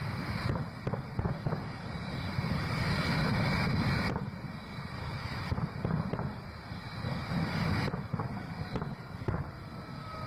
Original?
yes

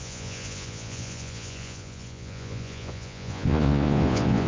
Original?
no